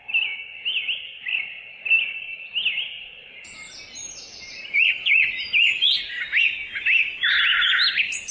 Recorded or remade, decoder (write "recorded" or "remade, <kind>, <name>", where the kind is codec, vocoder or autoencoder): recorded